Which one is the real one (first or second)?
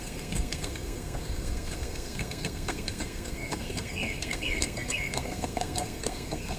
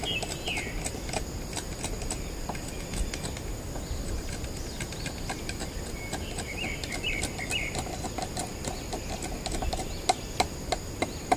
second